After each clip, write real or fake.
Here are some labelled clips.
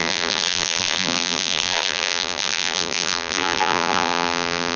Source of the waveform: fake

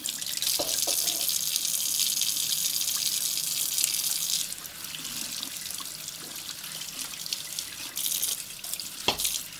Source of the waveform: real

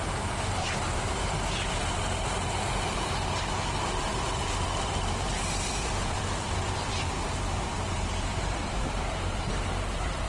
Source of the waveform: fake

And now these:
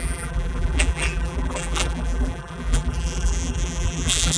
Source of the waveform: fake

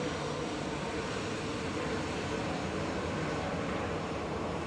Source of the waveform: real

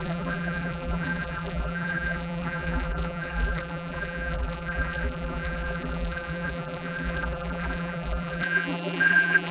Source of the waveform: fake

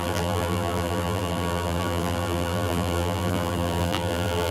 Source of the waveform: fake